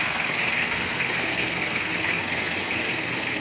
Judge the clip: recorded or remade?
remade